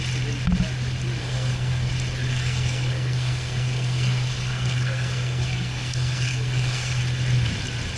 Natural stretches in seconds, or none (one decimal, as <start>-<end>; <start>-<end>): 0.0-1.2; 1.9-2.3; 7.0-8.0